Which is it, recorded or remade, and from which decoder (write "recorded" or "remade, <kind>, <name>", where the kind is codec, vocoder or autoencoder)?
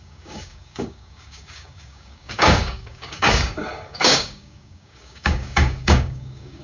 remade, codec, DAC